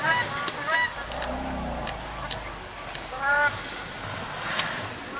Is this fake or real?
real